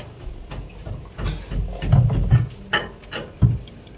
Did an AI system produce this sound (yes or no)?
no